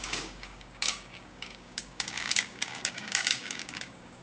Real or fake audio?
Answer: fake